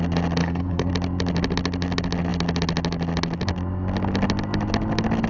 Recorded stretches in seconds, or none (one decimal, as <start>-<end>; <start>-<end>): 0.0-0.4; 0.9-5.3